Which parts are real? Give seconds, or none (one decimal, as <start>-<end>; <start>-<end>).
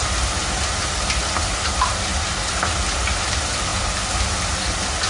0.0-5.1